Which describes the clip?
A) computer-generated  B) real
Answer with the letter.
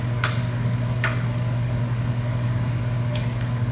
A